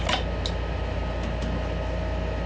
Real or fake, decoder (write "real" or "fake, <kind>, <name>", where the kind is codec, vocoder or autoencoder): real